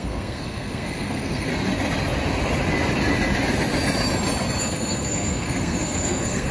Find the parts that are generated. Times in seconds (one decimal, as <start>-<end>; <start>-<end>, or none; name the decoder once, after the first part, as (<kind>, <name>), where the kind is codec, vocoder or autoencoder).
0.0-1.5 (codec, SNAC); 4.6-6.5